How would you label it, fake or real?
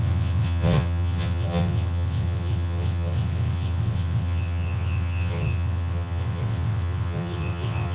fake